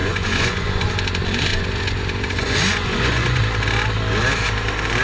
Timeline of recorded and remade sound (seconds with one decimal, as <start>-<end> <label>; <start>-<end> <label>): 0.0-0.9 remade; 0.9-1.5 recorded; 1.5-3.4 remade; 3.4-5.0 recorded